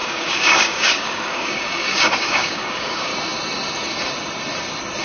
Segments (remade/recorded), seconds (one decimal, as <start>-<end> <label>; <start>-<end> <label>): 0.0-3.1 remade; 3.1-5.0 recorded